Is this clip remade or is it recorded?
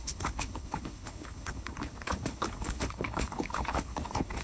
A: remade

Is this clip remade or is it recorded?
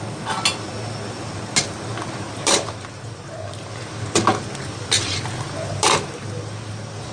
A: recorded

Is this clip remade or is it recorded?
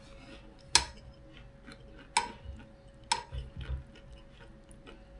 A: recorded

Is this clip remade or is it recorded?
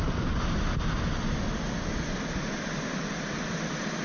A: recorded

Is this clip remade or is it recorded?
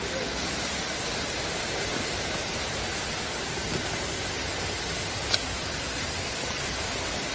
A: recorded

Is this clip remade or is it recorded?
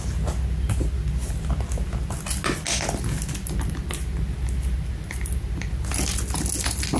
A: recorded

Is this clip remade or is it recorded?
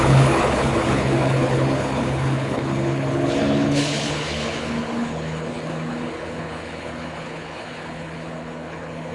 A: remade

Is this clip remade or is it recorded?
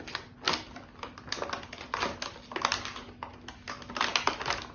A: recorded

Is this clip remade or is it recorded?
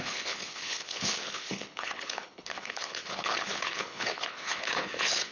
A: remade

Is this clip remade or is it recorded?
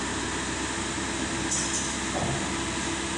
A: recorded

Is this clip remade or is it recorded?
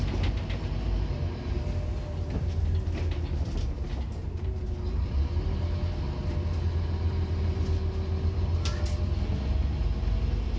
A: recorded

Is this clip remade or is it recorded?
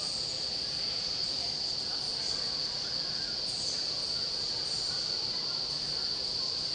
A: recorded